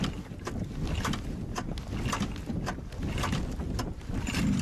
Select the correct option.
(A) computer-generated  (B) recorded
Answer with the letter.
B